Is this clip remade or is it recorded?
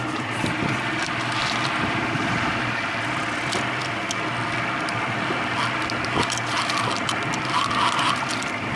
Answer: recorded